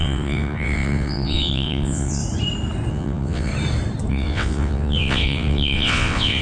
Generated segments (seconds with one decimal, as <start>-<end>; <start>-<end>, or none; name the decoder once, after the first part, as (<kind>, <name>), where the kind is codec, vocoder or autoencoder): 0.0-2.2 (vocoder, WaveNeXt); 2.9-3.5; 4.1-6.4